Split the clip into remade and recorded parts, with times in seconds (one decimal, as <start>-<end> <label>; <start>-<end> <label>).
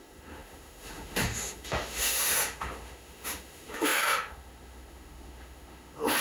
0.0-6.2 remade